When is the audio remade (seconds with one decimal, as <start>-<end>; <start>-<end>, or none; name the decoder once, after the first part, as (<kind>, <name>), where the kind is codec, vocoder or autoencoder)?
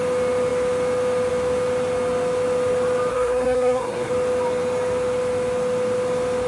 3.1-4.1 (codec, SNAC)